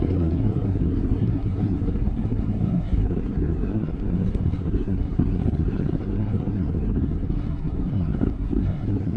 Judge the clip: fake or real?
fake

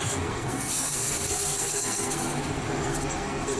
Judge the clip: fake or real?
fake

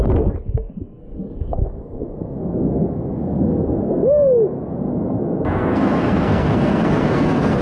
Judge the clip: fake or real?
fake